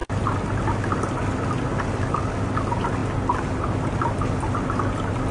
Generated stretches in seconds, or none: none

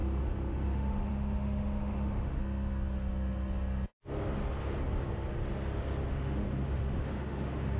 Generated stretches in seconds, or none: 0.0-2.4 (autoencoder, DAC-VAE); 6.1-7.8

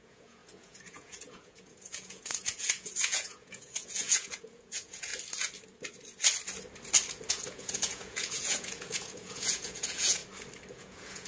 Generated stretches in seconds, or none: 0.0-5.1 (vocoder, Vocos); 7.3-10.2; 10.7-11.3

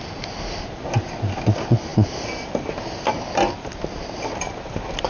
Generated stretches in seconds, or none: none

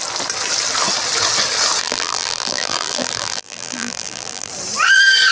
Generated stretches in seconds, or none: 1.8-4.5 (vocoder, BigVGAN v2)

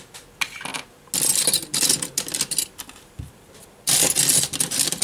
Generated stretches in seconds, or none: none

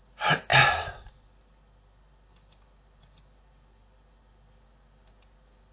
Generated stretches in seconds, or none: none

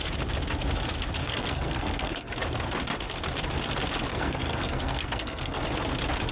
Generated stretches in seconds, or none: 1.2-2.3 (codec, SNAC); 4.1-5.6